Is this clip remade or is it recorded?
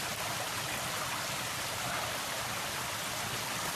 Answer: remade